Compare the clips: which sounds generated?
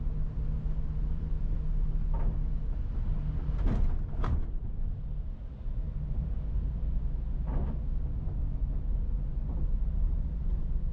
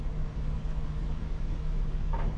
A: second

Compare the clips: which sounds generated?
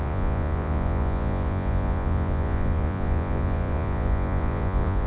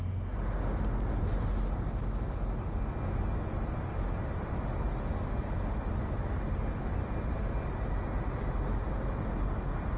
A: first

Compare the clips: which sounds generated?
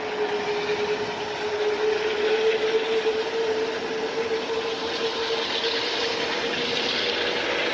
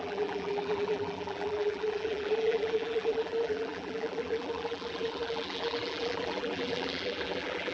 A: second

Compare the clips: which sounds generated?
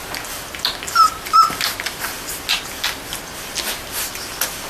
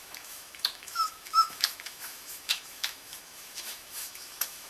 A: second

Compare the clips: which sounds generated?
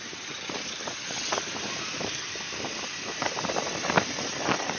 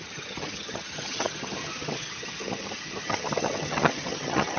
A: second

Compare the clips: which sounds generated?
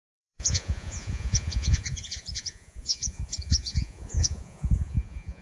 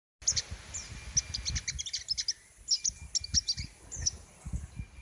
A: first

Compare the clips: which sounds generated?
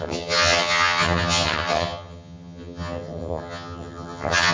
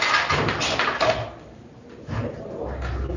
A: first